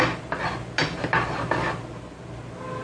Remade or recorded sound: recorded